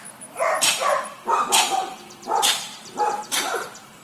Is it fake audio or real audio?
fake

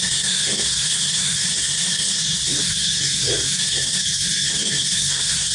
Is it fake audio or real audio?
fake